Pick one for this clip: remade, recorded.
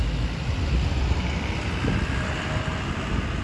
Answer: recorded